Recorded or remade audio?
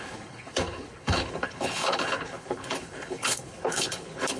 remade